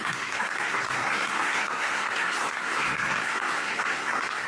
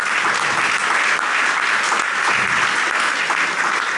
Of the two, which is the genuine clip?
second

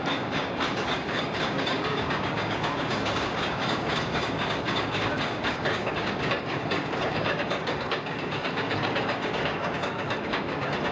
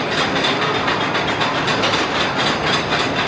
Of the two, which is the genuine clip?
second